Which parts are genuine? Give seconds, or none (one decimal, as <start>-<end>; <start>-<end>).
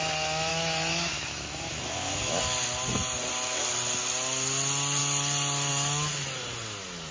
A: 0.0-0.5; 2.4-7.1